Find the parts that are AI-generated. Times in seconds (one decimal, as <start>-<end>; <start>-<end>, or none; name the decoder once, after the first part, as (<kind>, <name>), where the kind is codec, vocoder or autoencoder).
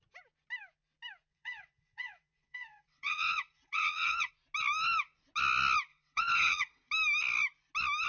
1.3-4.3 (vocoder, WaveNeXt); 5.9-6.9